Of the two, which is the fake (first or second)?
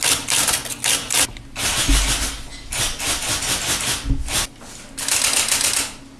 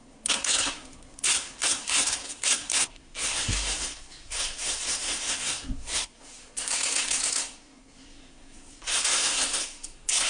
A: second